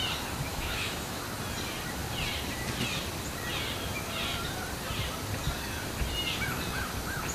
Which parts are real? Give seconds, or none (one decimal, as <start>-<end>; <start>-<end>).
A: 0.0-0.5; 1.2-7.3